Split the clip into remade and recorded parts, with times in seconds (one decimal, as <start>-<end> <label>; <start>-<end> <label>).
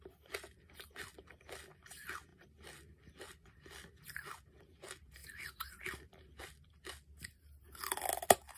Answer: 0.0-8.6 recorded